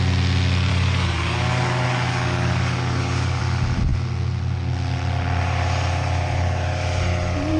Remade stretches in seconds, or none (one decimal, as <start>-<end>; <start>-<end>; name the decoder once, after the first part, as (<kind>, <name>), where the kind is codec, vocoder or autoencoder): 0.7-3.4 (codec, DAC)